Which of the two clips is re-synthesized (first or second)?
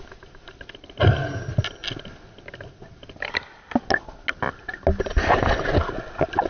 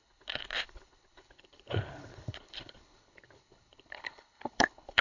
second